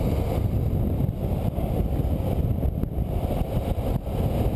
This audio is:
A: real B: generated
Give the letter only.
A